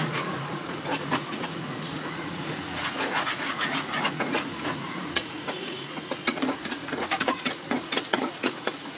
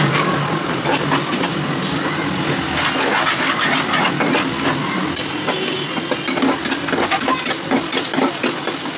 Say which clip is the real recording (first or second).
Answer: second